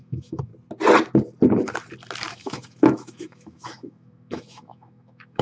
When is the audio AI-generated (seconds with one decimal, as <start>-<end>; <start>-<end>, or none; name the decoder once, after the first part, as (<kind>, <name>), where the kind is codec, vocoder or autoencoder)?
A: 0.0-0.5 (autoencoder, DAC-VAE); 2.3-5.4